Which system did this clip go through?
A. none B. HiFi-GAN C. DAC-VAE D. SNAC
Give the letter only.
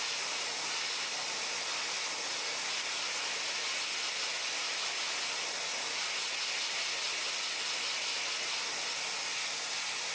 A